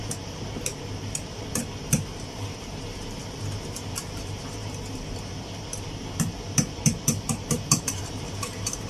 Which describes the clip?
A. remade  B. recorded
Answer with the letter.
A